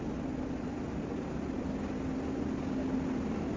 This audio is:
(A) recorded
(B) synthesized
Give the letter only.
A